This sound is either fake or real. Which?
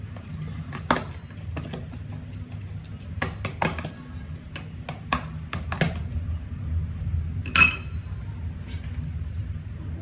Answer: real